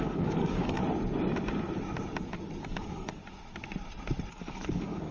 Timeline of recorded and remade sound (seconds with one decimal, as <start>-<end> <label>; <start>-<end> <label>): 0.0-0.8 remade; 0.8-2.6 recorded; 2.6-3.2 remade; 3.2-4.3 recorded; 4.3-5.1 remade